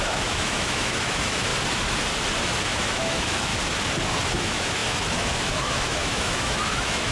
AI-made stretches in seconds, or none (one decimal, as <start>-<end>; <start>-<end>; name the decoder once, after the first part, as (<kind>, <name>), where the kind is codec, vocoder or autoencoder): 0.0-1.5 (autoencoder, DAC-VAE); 2.6-3.5; 4.3-7.1